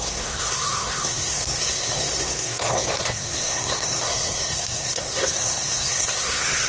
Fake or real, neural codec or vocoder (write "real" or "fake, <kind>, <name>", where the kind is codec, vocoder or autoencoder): fake, codec, SNAC